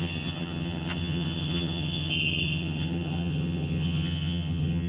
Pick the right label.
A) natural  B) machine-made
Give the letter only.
B